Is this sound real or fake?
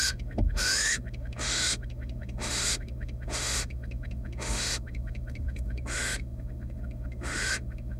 fake